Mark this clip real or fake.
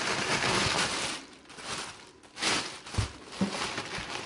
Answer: real